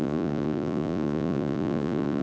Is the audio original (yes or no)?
no